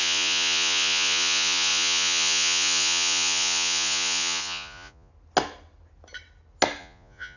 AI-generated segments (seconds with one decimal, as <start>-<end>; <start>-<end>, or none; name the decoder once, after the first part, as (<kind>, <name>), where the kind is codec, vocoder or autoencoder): 0.0-5.1 (vocoder, Vocos); 6.8-7.4